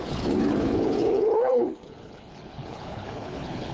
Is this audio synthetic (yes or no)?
yes